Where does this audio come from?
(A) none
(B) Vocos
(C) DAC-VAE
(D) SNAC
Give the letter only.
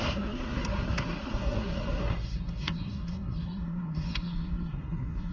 D